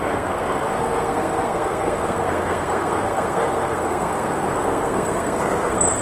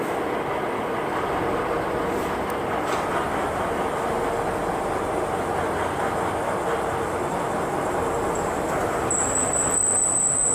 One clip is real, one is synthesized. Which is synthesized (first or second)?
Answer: first